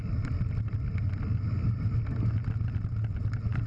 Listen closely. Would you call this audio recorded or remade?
recorded